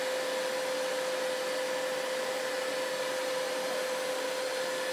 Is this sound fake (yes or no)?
no